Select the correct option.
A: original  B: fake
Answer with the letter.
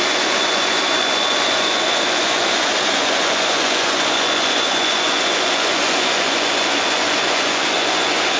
B